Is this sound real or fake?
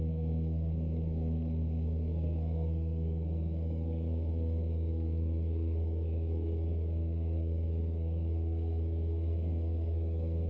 fake